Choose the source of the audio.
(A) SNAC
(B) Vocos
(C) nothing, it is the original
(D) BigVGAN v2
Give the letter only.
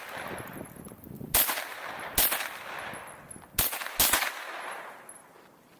C